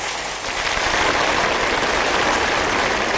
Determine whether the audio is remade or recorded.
recorded